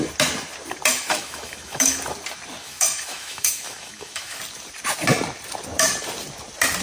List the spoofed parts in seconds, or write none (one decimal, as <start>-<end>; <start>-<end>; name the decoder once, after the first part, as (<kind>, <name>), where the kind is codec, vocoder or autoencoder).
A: 0.9-2.0 (autoencoder, DAC-VAE); 2.6-4.4